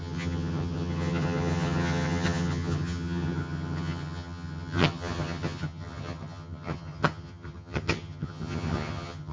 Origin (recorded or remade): remade